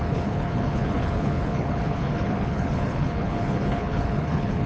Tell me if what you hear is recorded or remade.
remade